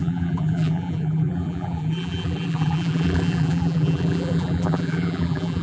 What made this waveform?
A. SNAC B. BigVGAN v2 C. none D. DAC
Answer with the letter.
B